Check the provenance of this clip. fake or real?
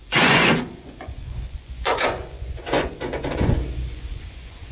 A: fake